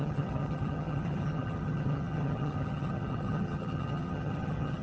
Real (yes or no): no